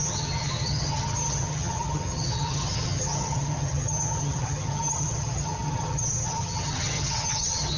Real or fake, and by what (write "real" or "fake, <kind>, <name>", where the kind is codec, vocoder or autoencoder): fake, vocoder, HiFi-GAN